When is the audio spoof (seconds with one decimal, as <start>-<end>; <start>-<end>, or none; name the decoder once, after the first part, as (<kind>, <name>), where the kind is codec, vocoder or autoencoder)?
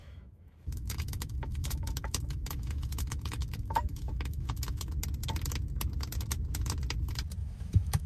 0.0-4.9 (autoencoder, DAC-VAE); 7.4-8.1